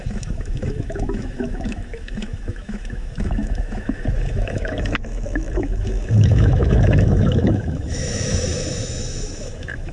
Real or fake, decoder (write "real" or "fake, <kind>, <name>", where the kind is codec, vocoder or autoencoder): fake, autoencoder, DAC-VAE